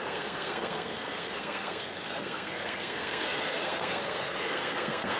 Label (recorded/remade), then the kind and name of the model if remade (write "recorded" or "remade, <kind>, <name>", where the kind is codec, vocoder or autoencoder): remade, codec, SNAC